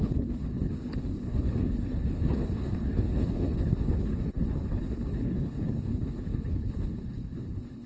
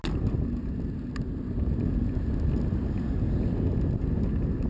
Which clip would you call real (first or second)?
second